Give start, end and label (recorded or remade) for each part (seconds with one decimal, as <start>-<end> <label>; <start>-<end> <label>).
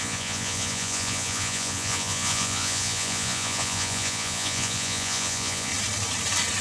0.0-5.7 remade; 5.7-6.6 recorded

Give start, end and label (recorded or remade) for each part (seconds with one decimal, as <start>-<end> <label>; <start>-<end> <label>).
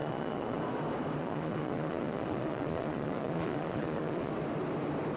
0.0-0.6 remade; 0.6-1.2 recorded; 1.2-4.3 remade; 4.3-5.2 recorded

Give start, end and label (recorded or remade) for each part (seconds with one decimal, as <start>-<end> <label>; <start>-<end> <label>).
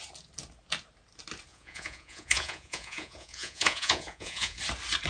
0.0-1.5 recorded; 1.5-4.6 remade; 4.6-5.1 recorded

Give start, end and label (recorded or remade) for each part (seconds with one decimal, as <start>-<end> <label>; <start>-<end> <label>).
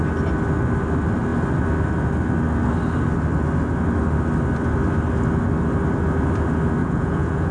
0.0-6.8 recorded; 6.8-7.5 remade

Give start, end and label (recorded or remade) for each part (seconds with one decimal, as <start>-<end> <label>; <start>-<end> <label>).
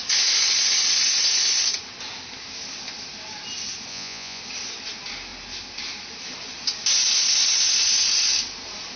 0.0-3.9 recorded; 3.9-4.4 remade; 4.4-9.0 recorded